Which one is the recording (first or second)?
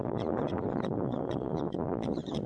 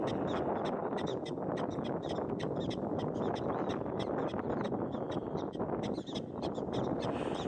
second